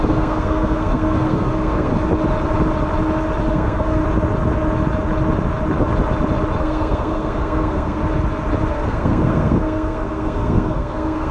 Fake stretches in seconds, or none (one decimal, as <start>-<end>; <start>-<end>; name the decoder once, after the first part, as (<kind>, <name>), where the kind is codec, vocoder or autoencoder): 0.0-1.9 (codec, SNAC); 3.5-4.0; 6.6-8.0; 8.7-11.3